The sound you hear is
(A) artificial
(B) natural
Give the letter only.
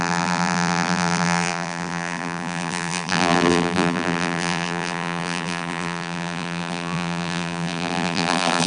A